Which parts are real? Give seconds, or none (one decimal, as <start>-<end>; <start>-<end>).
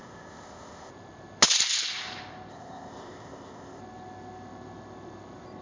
0.9-2.5; 3.8-5.6